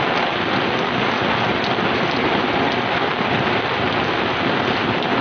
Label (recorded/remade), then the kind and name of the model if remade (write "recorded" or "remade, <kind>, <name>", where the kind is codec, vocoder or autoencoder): recorded